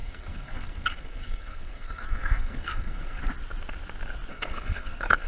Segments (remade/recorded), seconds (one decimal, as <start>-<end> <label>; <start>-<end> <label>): 0.0-3.2 remade; 3.2-4.3 recorded; 4.3-5.3 remade

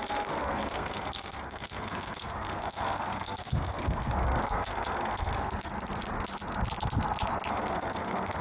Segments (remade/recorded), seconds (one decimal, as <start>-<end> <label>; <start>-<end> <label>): 0.0-5.3 remade; 5.3-7.5 recorded; 7.5-8.4 remade

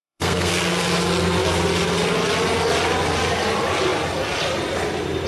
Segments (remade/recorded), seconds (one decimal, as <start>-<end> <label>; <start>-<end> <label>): 0.0-0.5 remade; 0.5-5.3 recorded

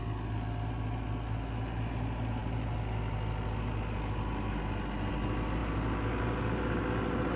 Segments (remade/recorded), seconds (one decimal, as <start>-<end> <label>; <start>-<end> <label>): 0.0-7.4 recorded

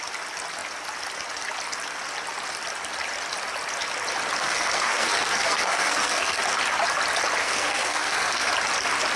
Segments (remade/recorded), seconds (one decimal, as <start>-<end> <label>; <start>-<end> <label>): 0.0-4.4 recorded; 4.4-6.4 remade; 6.4-7.4 recorded; 7.4-8.5 remade; 8.5-9.2 recorded

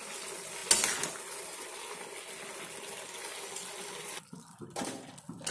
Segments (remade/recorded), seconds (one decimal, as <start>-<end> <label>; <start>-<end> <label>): 0.0-5.5 recorded